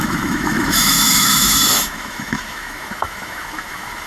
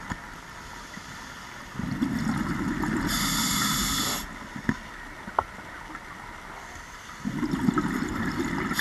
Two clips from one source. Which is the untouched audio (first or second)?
second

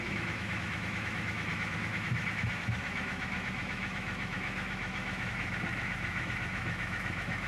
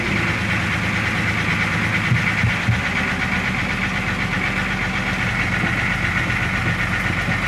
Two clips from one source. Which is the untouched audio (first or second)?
second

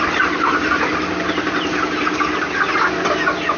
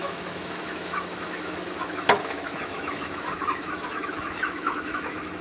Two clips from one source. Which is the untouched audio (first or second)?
first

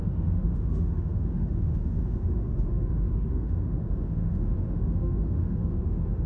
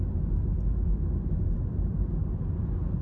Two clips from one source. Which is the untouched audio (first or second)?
second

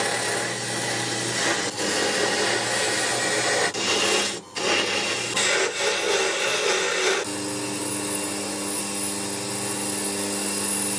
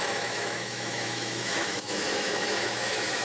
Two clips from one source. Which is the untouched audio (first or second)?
first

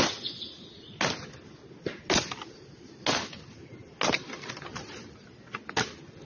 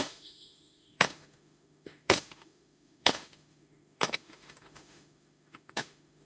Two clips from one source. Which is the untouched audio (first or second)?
first